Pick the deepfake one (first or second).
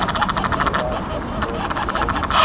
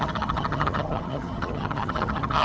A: second